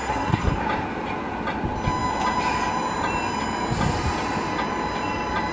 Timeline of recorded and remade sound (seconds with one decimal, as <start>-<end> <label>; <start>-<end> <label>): 0.0-0.5 remade; 0.5-5.5 recorded